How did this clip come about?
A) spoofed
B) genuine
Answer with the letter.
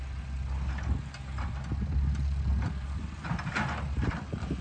B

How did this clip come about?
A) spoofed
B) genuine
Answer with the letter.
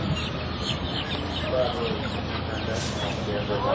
B